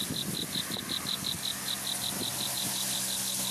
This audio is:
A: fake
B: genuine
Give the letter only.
B